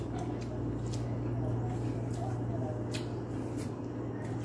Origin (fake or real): real